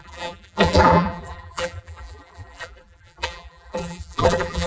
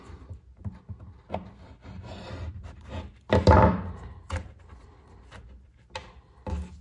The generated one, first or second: first